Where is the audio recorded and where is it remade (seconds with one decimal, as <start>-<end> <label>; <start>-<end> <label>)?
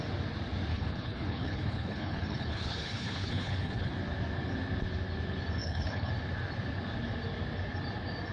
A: 0.0-0.7 recorded; 0.7-3.9 remade; 3.9-5.6 recorded; 5.6-6.1 remade; 6.1-8.3 recorded